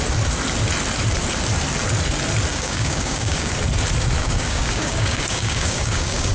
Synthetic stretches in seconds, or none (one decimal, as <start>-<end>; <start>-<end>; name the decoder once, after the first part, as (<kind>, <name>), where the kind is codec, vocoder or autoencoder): 2.5-3.5 (codec, DAC); 4.2-6.3